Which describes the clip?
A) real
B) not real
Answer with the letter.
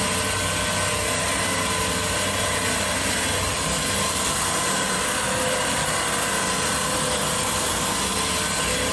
A